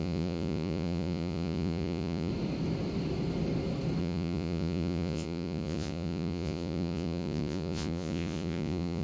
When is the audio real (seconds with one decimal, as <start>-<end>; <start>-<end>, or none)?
2.3-4.0